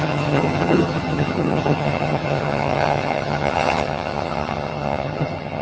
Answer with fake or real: fake